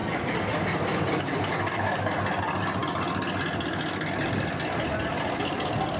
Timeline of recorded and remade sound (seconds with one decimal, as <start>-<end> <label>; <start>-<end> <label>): 0.0-6.0 recorded